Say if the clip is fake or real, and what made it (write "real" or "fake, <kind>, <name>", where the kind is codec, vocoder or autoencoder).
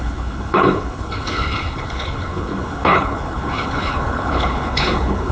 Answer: fake, codec, HILCodec